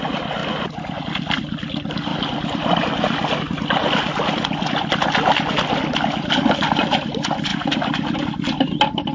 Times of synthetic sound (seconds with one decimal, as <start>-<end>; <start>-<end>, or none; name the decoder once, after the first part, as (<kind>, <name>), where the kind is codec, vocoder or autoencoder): 2.1-3.4 (vocoder, BigVGAN v2); 7.5-8.2